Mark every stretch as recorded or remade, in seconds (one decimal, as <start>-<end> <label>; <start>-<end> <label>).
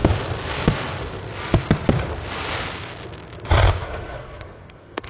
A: 0.0-3.8 recorded; 3.8-5.1 remade